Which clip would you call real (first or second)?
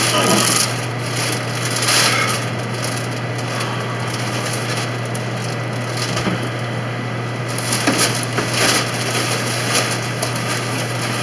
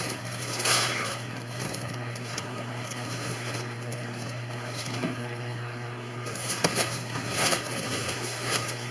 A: first